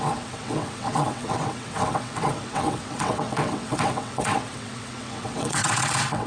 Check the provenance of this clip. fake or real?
fake